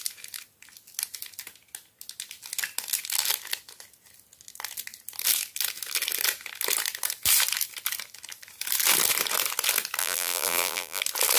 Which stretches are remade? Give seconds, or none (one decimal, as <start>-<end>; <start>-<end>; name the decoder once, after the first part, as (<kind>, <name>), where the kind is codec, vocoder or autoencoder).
10.0-11.0 (vocoder, BigVGAN v2)